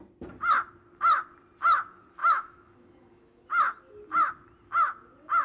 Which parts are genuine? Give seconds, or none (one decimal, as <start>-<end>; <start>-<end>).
0.0-2.2; 3.5-5.4